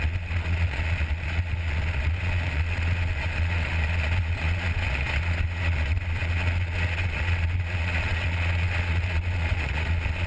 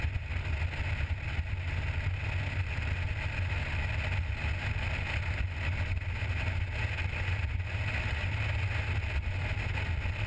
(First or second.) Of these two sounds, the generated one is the first